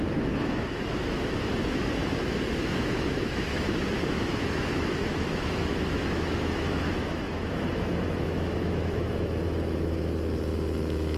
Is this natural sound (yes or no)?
no